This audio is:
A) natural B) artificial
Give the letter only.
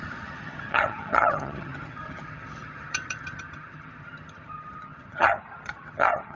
B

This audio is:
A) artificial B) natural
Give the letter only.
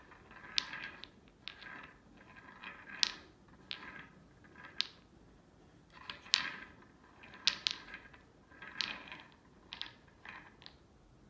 B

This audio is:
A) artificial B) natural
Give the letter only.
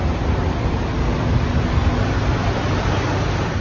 B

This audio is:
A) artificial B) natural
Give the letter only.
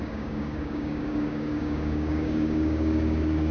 A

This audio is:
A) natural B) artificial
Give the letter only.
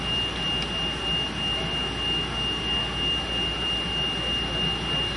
A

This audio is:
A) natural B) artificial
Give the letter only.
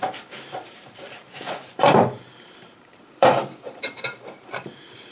B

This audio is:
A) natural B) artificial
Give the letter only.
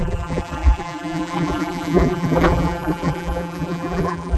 B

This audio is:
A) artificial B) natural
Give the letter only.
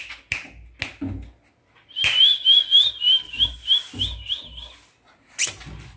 B